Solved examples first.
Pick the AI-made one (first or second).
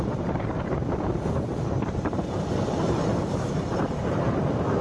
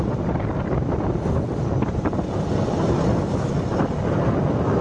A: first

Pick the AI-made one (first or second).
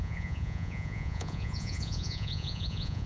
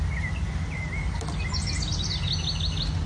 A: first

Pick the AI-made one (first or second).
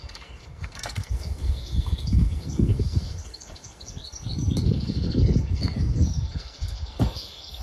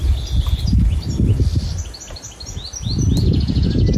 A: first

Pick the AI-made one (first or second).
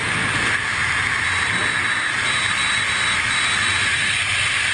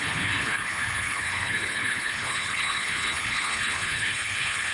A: second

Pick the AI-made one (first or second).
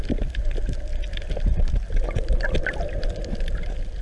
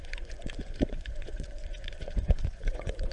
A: second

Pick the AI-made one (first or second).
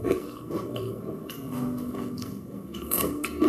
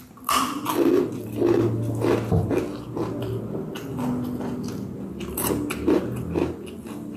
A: first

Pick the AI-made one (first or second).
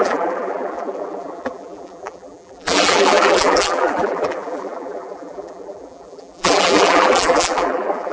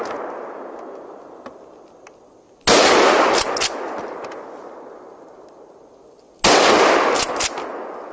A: first